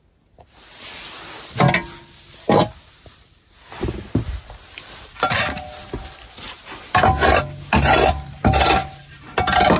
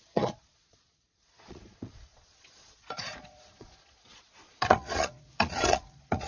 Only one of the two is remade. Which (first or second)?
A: second